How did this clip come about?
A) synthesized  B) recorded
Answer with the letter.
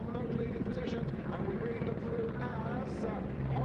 A